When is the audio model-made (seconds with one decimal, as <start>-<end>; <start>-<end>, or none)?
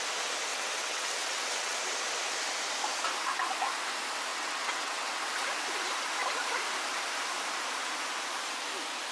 0.5-1.8; 4.3-5.2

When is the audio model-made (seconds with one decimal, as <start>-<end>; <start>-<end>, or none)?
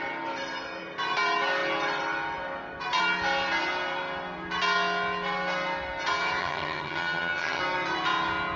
6.4-7.6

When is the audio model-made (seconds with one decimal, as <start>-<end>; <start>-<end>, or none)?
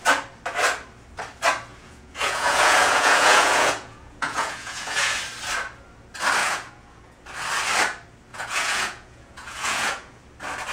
1.7-5.2; 6.4-7.2; 8.3-10.2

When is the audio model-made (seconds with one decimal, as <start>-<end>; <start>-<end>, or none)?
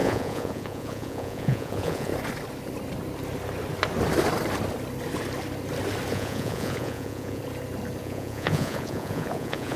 0.0-2.1; 6.1-7.4; 8.0-9.8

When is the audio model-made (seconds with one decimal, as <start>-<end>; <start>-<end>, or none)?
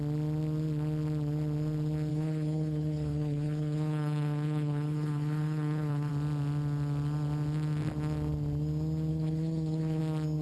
2.1-6.1; 9.1-10.0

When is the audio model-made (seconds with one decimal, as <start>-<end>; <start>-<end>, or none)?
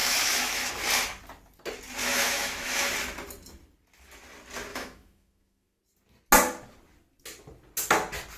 0.0-0.7; 2.0-2.9; 4.7-5.8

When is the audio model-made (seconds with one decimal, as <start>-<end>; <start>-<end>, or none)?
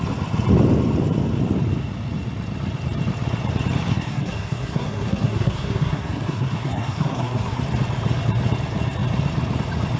3.9-7.6